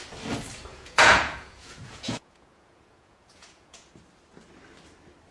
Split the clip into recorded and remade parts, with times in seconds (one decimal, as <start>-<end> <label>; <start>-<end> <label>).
0.0-0.7 recorded; 0.7-3.9 remade; 3.9-5.3 recorded